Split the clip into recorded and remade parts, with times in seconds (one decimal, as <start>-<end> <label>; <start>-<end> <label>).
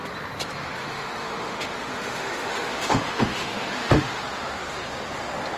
0.0-0.8 recorded; 0.8-4.2 remade; 4.2-5.6 recorded